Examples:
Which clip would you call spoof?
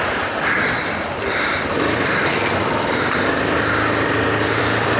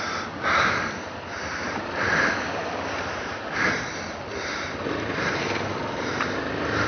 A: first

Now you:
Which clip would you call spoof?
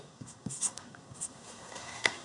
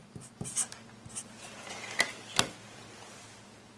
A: first